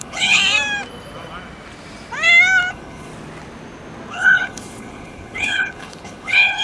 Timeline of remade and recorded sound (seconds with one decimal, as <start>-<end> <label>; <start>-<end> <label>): 0.0-0.4 remade; 0.4-2.7 recorded; 2.7-3.1 remade; 3.1-4.1 recorded; 4.1-6.6 remade